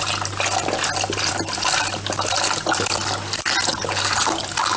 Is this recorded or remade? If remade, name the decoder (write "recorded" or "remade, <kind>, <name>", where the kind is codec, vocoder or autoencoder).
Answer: recorded